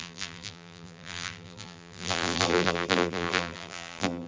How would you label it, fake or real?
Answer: fake